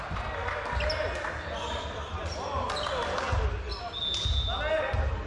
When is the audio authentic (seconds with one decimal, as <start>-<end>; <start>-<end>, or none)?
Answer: 0.0-5.3